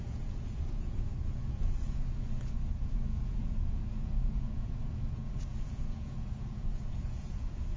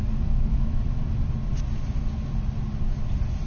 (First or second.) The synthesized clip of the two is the first